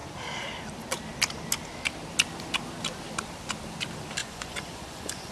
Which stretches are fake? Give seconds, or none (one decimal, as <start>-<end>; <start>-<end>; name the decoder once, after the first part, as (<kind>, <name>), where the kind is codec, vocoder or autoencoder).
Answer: 4.2-5.3 (vocoder, Vocos)